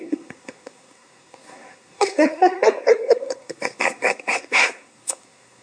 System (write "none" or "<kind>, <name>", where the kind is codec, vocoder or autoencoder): codec, SNAC